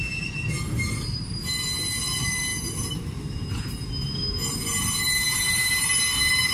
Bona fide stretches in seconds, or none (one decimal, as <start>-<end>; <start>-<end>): 0.0-6.5